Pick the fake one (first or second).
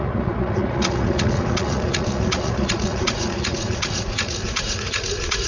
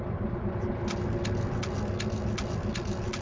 first